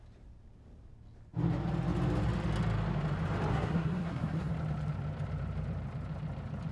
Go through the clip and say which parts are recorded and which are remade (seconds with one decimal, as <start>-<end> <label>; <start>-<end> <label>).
0.0-3.5 recorded; 3.5-4.5 remade; 4.5-6.7 recorded